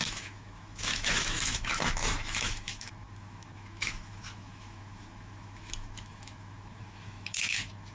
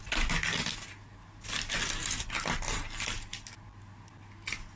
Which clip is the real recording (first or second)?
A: second